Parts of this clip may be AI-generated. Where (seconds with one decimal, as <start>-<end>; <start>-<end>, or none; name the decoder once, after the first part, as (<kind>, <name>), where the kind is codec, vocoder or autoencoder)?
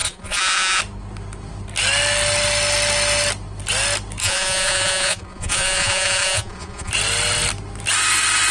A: 0.0-0.8 (vocoder, Vocos); 4.2-6.9